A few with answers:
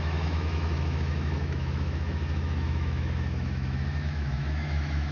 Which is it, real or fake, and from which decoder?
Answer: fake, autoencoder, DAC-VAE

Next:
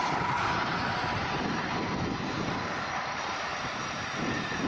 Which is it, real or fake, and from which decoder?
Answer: fake, vocoder, BigVGAN v2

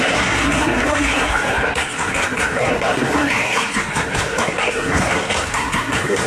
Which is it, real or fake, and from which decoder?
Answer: fake, codec, SNAC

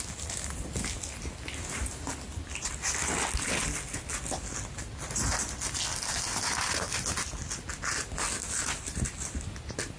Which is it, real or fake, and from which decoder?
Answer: real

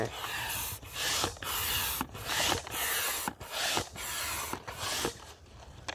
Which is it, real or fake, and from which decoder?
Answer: real